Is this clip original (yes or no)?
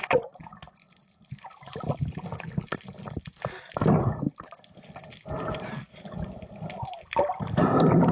yes